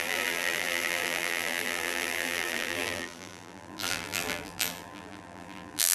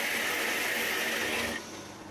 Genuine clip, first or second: second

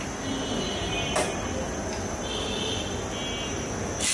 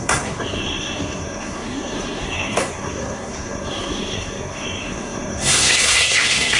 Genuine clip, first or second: first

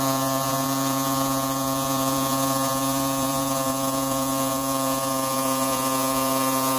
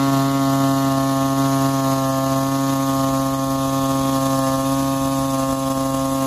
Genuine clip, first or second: second